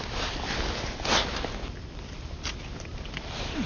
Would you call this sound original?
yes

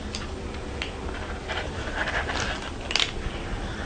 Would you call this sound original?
yes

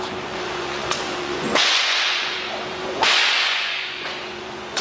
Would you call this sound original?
no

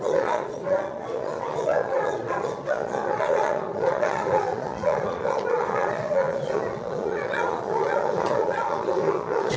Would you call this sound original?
no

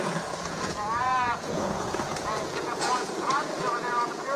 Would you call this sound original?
no